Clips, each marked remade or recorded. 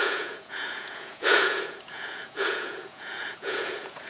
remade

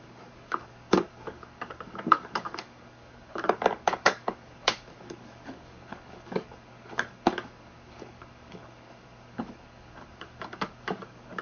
remade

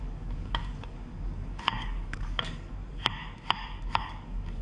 remade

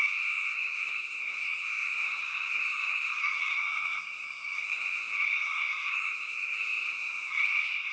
remade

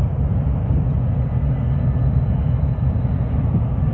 recorded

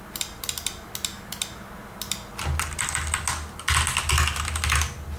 recorded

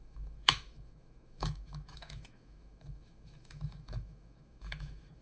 remade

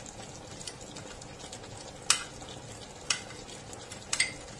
recorded